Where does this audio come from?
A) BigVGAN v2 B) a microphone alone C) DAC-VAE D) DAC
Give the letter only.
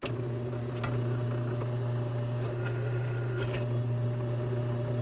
B